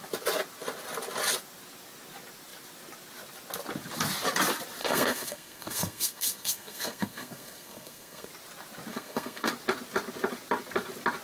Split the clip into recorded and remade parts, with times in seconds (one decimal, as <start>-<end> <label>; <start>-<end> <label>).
0.0-4.8 recorded; 4.8-8.3 remade; 8.3-8.9 recorded; 8.9-9.5 remade; 9.5-11.2 recorded